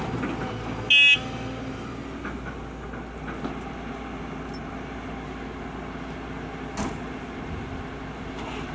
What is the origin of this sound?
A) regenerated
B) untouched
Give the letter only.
B